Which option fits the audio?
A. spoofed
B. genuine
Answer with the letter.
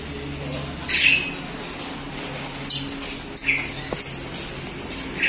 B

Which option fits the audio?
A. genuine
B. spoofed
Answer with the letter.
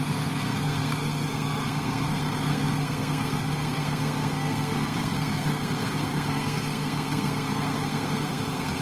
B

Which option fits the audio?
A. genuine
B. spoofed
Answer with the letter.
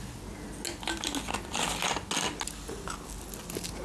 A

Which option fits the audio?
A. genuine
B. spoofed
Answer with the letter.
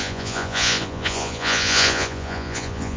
B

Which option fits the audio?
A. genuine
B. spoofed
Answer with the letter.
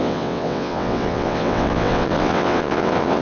B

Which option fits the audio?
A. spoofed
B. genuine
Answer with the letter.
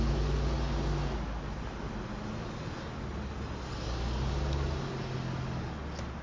B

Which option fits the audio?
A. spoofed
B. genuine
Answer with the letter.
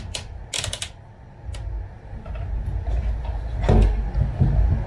B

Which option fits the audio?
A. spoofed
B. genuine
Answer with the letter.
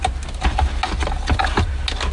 B